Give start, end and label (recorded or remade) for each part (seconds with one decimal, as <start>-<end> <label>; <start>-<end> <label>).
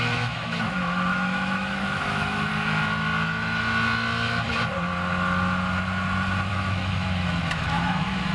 0.0-2.5 remade; 2.5-6.5 recorded; 6.5-8.3 remade